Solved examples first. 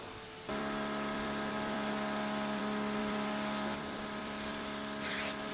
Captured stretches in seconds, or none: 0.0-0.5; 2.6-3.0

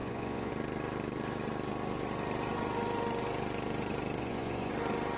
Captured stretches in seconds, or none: 0.5-4.2; 4.7-5.2

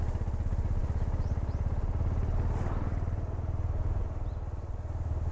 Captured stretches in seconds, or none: 0.0-5.3

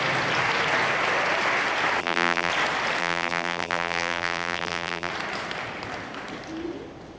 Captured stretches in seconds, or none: 0.0-2.0; 2.5-3.0; 5.1-7.2

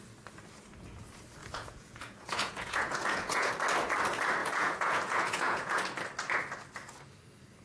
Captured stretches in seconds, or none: 0.0-1.4; 3.5-4.4; 5.8-7.6

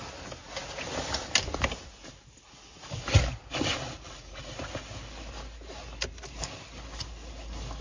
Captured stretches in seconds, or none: 0.0-7.8